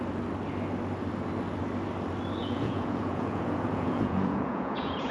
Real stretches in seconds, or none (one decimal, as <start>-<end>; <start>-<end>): 0.0-2.4